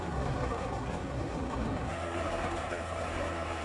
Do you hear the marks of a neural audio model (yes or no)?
yes